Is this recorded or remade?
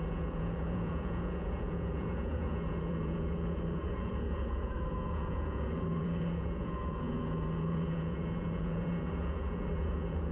remade